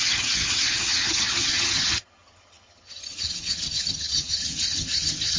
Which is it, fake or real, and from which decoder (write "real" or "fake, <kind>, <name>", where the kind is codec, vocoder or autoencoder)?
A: fake, vocoder, HiFi-GAN